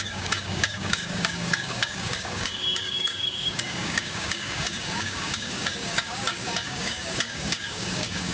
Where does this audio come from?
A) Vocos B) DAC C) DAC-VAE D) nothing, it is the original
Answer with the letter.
B